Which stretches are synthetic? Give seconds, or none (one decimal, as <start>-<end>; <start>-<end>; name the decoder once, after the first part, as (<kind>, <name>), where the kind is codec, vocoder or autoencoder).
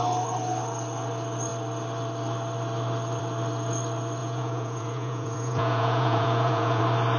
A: 4.2-6.8 (vocoder, Vocos)